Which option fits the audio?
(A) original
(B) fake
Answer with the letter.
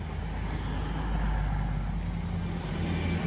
A